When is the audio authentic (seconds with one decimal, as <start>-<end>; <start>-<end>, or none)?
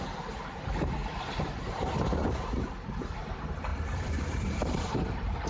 0.0-1.0; 3.2-3.7